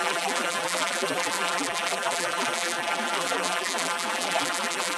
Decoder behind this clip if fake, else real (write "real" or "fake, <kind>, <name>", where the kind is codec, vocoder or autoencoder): fake, vocoder, BigVGAN v2